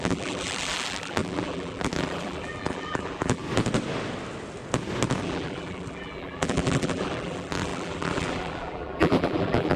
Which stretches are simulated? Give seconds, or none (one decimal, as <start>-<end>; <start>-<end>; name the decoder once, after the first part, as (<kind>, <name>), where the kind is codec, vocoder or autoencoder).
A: 0.0-3.4 (vocoder, BigVGAN v2); 5.2-9.8